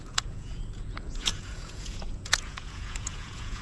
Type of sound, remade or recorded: remade